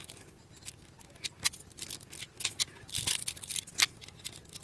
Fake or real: real